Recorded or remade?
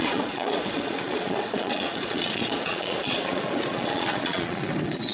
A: remade